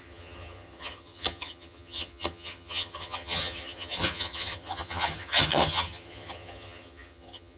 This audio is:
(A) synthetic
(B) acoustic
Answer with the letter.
A